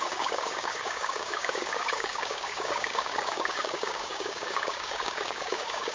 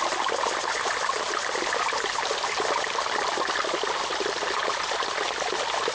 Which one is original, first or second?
second